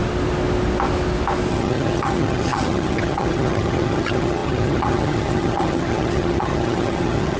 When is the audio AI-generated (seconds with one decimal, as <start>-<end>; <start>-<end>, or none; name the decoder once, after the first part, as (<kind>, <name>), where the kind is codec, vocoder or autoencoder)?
1.5-7.4 (vocoder, HiFi-GAN)